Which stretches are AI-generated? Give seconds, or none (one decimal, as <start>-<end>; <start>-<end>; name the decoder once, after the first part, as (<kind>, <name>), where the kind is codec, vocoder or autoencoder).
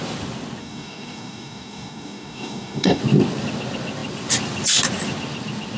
0.6-3.0 (codec, DAC)